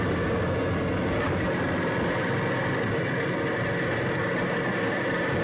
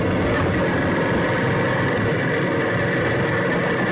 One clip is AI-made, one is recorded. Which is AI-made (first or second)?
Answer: second